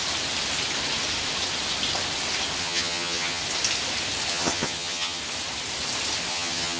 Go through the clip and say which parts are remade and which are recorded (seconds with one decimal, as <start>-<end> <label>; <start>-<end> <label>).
0.0-2.6 recorded; 2.6-3.4 remade; 3.4-4.3 recorded; 4.3-5.2 remade; 5.2-6.3 recorded; 6.3-6.8 remade